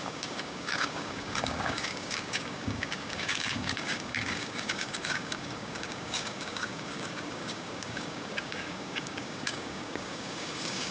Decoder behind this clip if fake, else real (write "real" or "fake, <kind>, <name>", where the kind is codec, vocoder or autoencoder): fake, codec, DAC